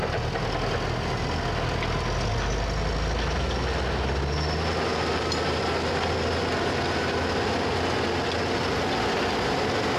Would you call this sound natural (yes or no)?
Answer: yes